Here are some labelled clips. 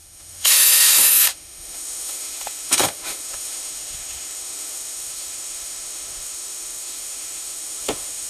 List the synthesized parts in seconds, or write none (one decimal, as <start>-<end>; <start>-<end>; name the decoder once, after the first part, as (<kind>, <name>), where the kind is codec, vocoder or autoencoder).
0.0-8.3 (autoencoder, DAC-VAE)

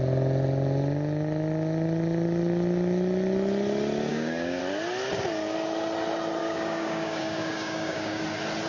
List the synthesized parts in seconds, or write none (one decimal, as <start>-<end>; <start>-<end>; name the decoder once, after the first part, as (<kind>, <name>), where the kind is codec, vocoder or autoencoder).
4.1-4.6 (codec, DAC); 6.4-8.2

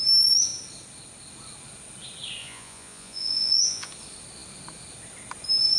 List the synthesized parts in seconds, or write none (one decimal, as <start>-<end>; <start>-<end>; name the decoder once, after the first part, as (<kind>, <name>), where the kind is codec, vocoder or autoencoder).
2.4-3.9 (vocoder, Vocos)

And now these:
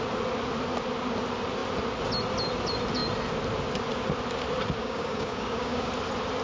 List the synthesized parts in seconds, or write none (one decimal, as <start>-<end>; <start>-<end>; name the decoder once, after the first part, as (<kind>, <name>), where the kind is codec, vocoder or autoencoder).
4.8-5.9 (codec, DAC)

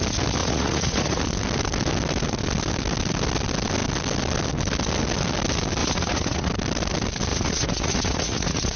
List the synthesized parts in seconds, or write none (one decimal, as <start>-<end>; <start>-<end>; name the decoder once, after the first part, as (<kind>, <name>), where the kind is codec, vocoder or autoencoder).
0.4-1.2 (vocoder, Vocos); 5.8-6.5; 7.3-8.8

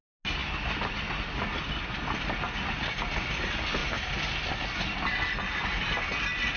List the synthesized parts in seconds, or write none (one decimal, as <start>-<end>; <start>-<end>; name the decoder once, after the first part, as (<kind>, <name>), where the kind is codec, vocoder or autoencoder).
none

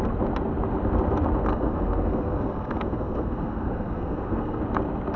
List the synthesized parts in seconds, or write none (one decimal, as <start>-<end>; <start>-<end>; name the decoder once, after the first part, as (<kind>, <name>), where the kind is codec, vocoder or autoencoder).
1.5-4.6 (codec, SNAC)